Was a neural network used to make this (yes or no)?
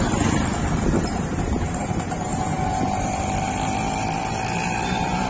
no